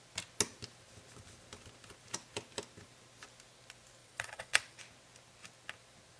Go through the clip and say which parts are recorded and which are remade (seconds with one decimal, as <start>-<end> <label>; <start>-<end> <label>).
0.0-4.0 recorded; 4.0-4.8 remade; 4.8-6.2 recorded